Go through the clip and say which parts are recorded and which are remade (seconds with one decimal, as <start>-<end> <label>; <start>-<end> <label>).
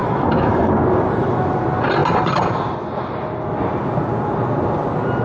0.0-0.7 remade; 0.7-5.2 recorded